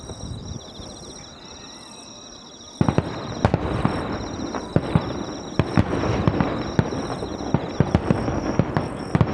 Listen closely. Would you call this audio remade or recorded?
recorded